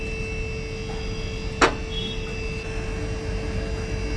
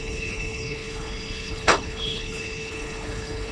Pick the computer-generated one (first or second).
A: second